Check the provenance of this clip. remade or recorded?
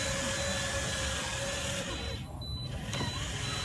recorded